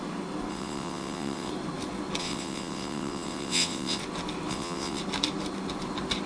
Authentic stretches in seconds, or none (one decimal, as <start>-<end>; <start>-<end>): 0.0-0.5; 1.5-2.2; 4.0-4.5; 5.0-6.3